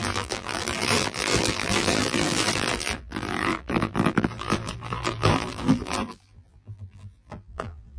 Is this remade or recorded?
remade